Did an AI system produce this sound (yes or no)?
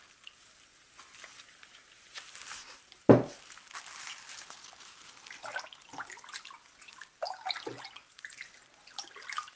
no